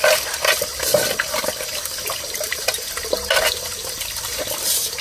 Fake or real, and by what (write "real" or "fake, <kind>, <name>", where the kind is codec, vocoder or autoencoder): real